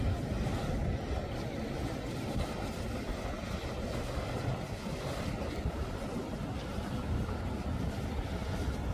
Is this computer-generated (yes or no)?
no